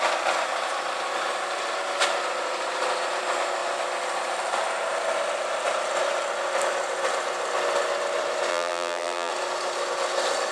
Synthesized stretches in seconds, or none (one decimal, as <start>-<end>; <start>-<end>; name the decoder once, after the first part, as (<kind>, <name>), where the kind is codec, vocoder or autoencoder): 8.5-9.3 (vocoder, BigVGAN v2)